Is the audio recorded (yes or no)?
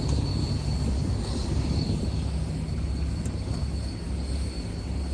yes